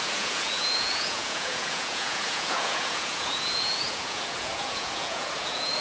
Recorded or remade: remade